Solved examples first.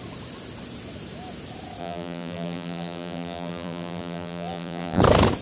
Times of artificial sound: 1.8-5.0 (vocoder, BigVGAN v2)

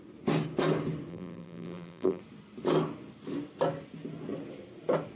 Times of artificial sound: 1.1-2.2 (vocoder, BigVGAN v2)

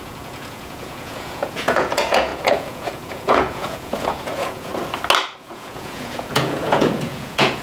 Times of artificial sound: 0.0-4.7 (vocoder, Vocos); 5.4-7.6